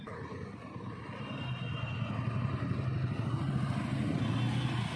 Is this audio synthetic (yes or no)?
no